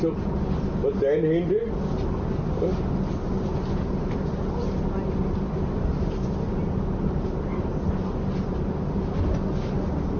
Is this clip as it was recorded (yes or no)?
yes